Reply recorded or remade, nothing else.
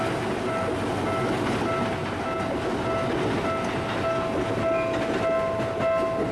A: recorded